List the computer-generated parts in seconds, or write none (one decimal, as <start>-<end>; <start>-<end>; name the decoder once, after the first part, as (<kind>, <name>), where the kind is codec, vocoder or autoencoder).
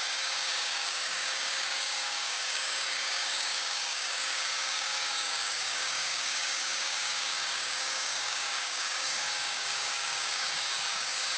0.0-11.4 (codec, DAC)